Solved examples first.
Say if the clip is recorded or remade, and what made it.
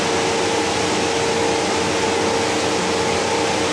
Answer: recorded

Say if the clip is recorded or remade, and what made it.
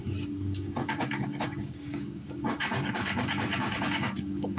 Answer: remade, codec, DAC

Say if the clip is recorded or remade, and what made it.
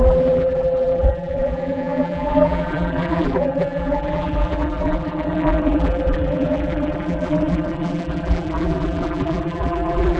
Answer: remade, vocoder, BigVGAN v2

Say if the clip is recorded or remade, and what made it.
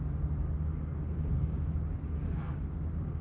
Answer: remade, codec, DAC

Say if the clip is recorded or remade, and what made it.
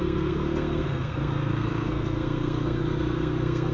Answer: remade, codec, SNAC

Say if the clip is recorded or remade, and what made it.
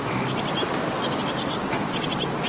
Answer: recorded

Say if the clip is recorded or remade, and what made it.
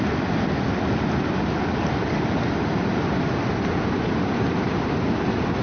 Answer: recorded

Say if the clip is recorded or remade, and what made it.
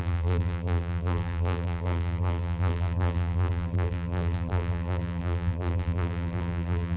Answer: remade, vocoder, BigVGAN v2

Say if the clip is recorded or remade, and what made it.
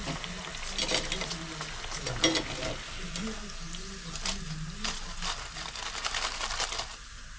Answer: recorded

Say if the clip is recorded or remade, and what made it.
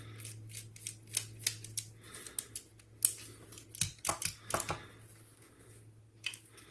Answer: recorded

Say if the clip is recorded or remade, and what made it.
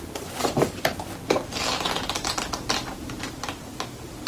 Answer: recorded